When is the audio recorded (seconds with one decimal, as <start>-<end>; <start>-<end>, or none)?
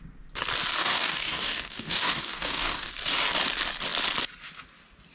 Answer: 0.0-0.8; 2.9-5.1